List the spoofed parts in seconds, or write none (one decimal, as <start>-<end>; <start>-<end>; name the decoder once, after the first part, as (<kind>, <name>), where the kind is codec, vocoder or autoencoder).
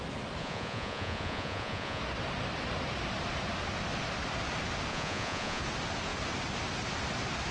0.4-2.0 (vocoder, Vocos); 4.9-5.6